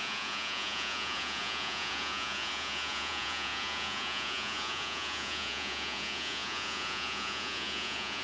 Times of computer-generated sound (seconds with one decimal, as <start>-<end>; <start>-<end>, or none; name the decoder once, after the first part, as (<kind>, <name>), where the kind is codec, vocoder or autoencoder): 0.0-8.2 (vocoder, Vocos)